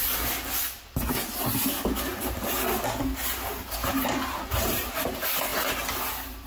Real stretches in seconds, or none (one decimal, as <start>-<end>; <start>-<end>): 0.0-3.8; 4.9-6.5